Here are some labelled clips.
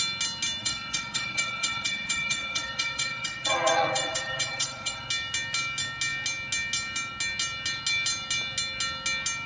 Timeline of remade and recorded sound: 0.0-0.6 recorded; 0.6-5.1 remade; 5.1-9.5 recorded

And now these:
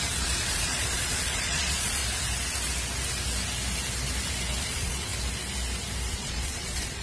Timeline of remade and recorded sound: 0.0-2.0 remade; 2.0-4.6 recorded; 4.6-5.1 remade; 5.1-6.1 recorded; 6.1-7.0 remade

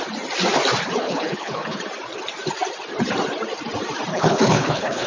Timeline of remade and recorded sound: 0.0-1.0 recorded; 1.0-1.8 remade; 1.8-4.1 recorded; 4.1-5.1 remade

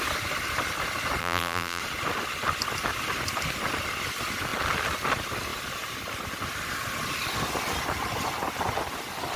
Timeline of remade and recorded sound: 0.0-1.2 recorded; 1.2-1.8 remade; 1.8-9.4 recorded

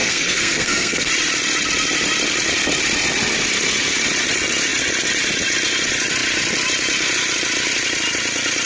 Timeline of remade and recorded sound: 0.0-1.1 remade; 1.1-8.7 recorded

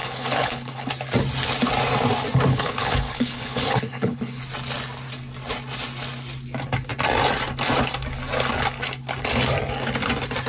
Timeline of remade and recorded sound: 0.0-0.9 remade; 0.9-2.5 recorded; 2.5-4.4 remade; 4.4-10.5 recorded

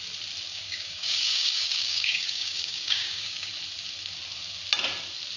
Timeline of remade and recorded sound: 0.0-0.5 recorded; 0.5-3.5 remade; 3.5-5.4 recorded